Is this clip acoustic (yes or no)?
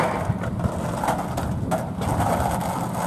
yes